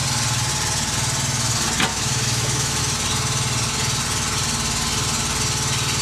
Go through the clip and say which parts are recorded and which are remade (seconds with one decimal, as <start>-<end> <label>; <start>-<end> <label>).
0.0-1.9 recorded; 1.9-2.8 remade; 2.8-6.0 recorded